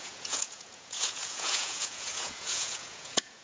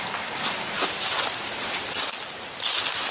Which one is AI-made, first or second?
first